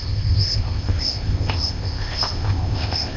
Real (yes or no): no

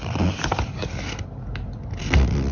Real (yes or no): yes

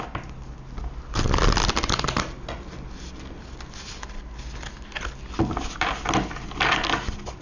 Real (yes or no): yes